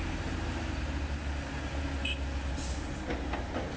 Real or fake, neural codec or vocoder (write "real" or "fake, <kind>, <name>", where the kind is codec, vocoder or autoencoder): real